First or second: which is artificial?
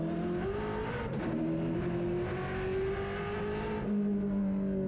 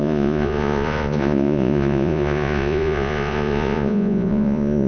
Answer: second